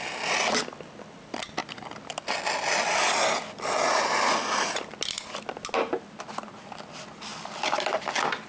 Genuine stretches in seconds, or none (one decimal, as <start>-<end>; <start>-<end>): 0.0-8.5